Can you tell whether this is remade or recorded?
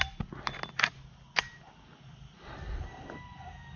recorded